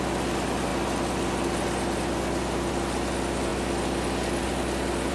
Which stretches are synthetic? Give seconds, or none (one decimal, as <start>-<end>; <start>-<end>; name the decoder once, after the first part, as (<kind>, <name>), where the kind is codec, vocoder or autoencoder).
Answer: none